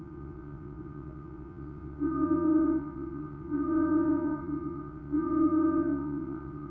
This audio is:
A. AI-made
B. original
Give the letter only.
A